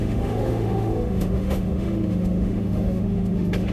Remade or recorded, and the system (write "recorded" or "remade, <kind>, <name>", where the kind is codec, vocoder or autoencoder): remade, autoencoder, DAC-VAE